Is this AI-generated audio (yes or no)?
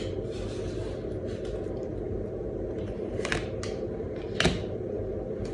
no